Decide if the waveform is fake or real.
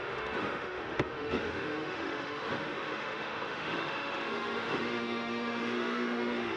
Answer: fake